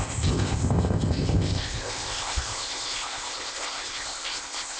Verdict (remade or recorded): remade